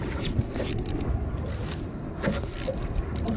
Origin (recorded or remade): recorded